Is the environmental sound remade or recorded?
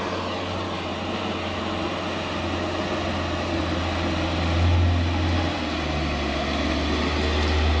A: recorded